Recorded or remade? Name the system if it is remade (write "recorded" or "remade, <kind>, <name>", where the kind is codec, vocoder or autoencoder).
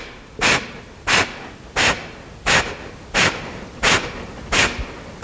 recorded